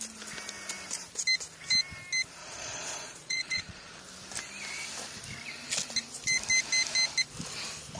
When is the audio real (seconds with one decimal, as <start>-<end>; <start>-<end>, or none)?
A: 0.0-2.4; 4.0-8.0